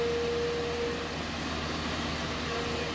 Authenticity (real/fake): real